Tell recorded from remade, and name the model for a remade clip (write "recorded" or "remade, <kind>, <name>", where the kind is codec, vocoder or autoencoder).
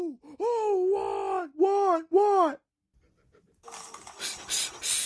recorded